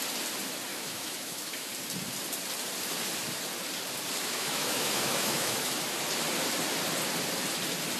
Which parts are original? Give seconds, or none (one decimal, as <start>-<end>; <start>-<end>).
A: 0.0-0.7; 1.7-4.2; 5.7-8.0